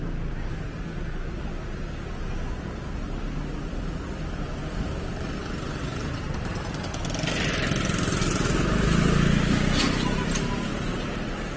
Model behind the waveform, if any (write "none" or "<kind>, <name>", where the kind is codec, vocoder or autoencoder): none